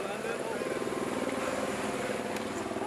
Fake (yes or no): no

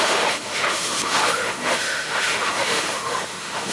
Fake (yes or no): yes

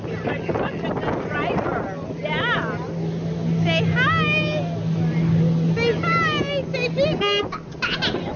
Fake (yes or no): no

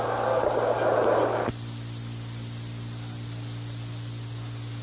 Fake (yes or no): no